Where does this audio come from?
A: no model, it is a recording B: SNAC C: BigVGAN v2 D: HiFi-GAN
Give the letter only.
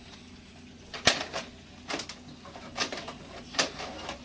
A